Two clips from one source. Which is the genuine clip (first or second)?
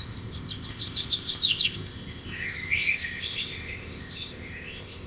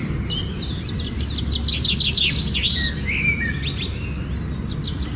second